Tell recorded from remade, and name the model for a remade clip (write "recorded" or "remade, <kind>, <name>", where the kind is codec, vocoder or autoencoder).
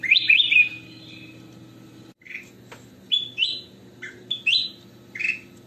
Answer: recorded